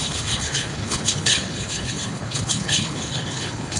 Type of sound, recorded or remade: remade